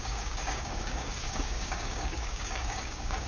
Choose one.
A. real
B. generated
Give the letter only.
B